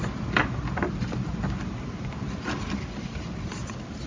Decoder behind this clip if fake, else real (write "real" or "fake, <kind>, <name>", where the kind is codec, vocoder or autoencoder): real